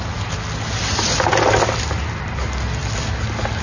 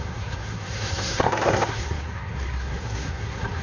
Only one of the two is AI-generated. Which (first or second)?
second